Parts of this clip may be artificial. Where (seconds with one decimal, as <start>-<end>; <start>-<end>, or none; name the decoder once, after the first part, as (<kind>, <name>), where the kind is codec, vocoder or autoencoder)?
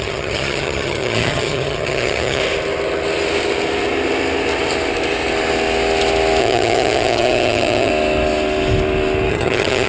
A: 0.0-2.4 (vocoder, HiFi-GAN); 6.4-7.9; 9.3-9.9